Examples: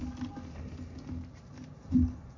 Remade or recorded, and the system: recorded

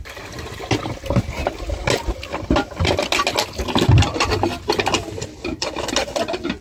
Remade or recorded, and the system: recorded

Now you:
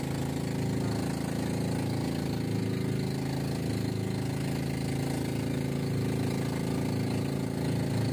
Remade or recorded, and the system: recorded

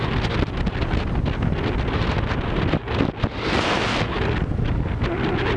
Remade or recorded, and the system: recorded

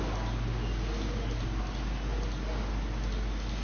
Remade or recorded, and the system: recorded